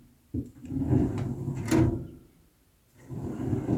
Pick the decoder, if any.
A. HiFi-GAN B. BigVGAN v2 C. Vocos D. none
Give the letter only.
D